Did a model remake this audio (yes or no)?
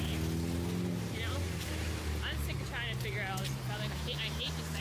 no